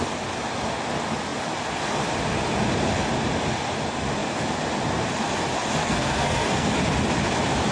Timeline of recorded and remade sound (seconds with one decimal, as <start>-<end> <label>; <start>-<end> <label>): 0.0-5.8 recorded; 5.8-6.7 remade; 6.7-7.7 recorded